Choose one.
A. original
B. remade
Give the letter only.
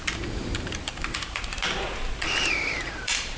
B